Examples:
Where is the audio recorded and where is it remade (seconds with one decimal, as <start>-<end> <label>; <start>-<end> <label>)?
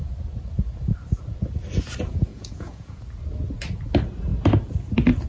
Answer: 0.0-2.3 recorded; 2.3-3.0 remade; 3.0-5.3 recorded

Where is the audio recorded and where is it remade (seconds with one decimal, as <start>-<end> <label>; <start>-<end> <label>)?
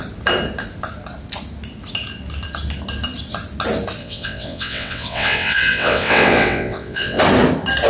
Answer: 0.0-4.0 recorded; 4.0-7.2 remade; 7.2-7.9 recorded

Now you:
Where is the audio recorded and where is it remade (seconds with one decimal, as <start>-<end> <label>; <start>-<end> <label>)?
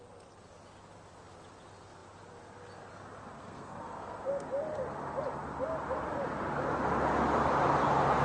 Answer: 0.0-3.4 recorded; 3.4-4.3 remade; 4.3-8.2 recorded